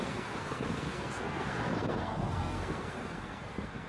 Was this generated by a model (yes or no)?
yes